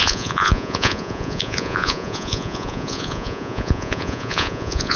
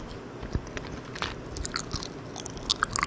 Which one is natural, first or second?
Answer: second